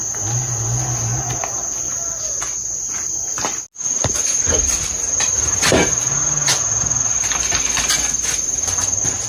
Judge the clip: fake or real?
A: real